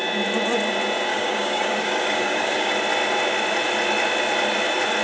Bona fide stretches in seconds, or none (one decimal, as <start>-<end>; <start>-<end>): 0.0-1.1; 2.7-5.0